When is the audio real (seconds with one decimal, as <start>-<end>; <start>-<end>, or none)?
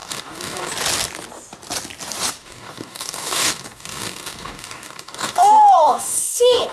0.7-2.4